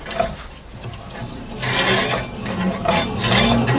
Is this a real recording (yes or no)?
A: yes